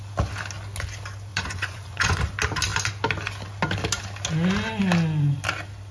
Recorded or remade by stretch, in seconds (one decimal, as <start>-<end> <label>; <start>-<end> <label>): 0.0-1.3 recorded; 1.3-2.2 remade; 2.2-5.9 recorded